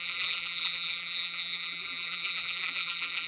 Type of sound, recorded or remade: remade